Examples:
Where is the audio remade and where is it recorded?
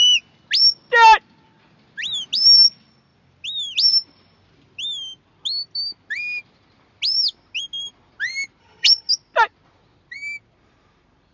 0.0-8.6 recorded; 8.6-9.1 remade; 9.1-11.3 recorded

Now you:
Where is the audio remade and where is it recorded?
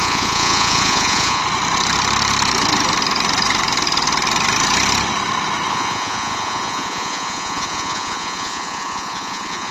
0.0-1.4 remade; 1.4-5.7 recorded; 5.7-9.7 remade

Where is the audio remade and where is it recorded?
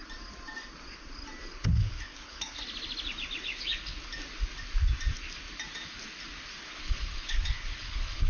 0.0-1.5 recorded; 1.5-2.6 remade; 2.6-3.5 recorded; 3.5-4.0 remade; 4.0-6.6 recorded; 6.6-8.3 remade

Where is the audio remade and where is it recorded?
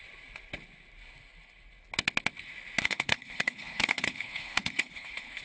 0.0-2.8 recorded; 2.8-5.4 remade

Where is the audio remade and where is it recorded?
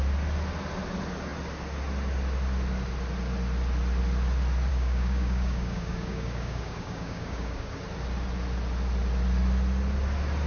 0.0-4.7 recorded; 4.7-7.8 remade; 7.8-10.5 recorded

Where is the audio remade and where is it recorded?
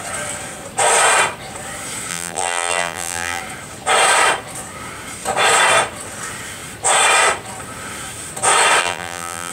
0.0-2.1 recorded; 2.1-3.4 remade; 3.4-8.8 recorded; 8.8-9.5 remade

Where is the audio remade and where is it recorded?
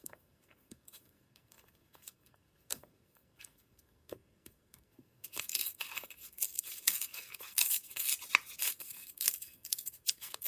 0.0-8.1 remade; 8.1-8.6 recorded; 8.6-10.5 remade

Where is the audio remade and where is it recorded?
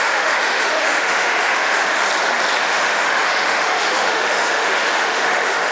0.0-2.0 remade; 2.0-2.6 recorded; 2.6-5.7 remade